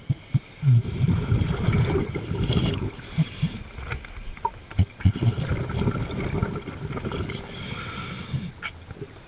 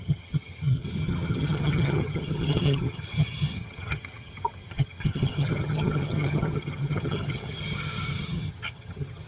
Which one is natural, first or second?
first